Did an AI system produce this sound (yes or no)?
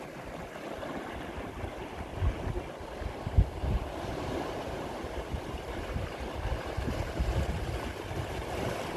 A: no